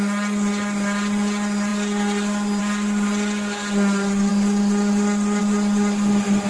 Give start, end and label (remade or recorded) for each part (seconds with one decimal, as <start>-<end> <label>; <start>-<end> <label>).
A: 0.0-6.5 recorded